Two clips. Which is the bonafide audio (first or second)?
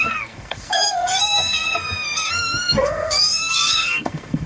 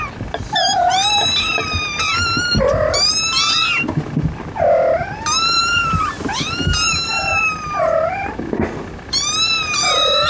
second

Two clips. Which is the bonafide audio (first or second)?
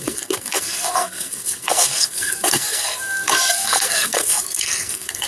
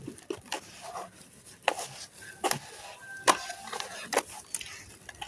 second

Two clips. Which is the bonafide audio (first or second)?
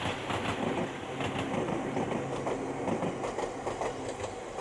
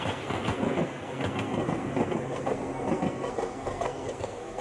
first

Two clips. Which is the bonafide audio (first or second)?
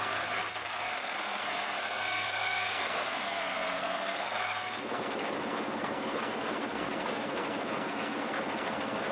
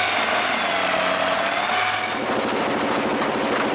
second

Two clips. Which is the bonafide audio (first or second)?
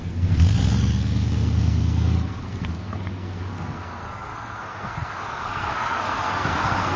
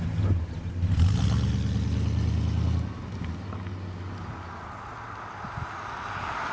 second